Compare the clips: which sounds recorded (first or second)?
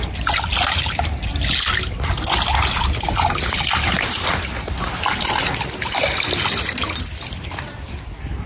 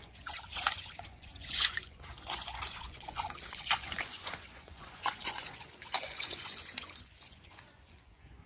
first